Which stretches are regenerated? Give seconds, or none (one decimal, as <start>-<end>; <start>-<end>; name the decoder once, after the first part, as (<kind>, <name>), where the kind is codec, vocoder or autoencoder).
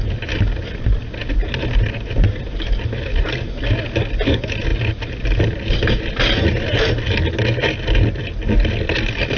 none